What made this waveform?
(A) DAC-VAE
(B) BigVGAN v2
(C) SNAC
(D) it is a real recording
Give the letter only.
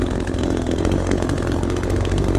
C